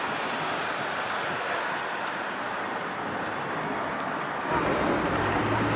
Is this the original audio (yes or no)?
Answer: yes